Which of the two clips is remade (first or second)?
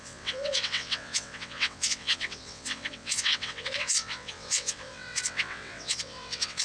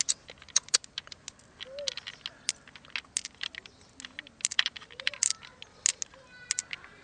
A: first